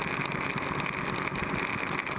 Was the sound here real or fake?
real